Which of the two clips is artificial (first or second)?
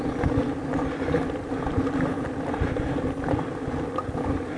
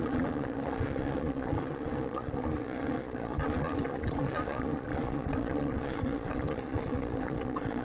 second